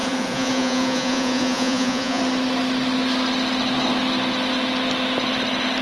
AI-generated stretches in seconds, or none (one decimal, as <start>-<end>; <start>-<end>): 0.0-2.2